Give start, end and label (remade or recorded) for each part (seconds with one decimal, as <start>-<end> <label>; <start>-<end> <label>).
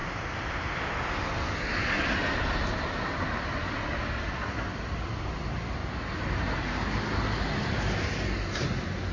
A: 0.0-0.9 remade; 0.9-9.1 recorded